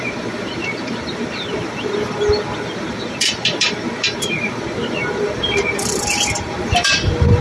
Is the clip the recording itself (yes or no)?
no